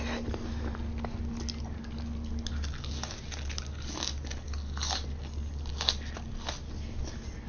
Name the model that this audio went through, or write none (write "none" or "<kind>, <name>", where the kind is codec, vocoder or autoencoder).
none